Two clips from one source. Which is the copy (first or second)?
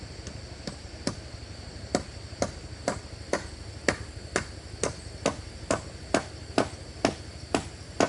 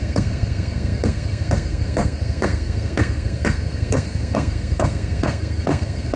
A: second